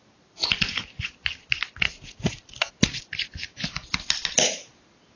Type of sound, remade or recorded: recorded